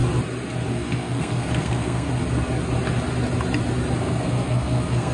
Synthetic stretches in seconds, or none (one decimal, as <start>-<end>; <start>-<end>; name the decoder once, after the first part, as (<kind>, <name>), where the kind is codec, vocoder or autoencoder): 0.7-2.1 (codec, SNAC); 4.0-5.1